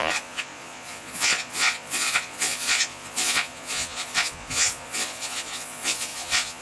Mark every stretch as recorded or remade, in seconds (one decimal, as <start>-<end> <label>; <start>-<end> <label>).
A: 0.0-6.6 remade